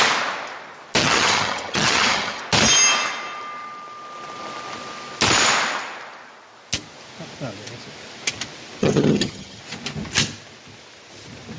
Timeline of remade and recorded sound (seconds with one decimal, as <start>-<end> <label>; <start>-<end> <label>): 0.0-1.0 recorded; 1.0-2.4 remade; 2.4-8.8 recorded; 8.8-9.6 remade; 9.6-11.6 recorded